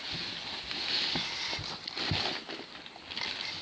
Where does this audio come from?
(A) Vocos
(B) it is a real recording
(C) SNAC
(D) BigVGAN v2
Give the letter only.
B